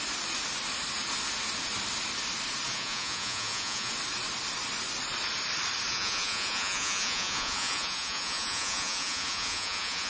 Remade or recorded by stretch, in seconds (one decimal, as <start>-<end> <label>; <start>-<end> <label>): 0.0-2.7 recorded; 2.7-3.9 remade; 3.9-5.9 recorded; 5.9-10.1 remade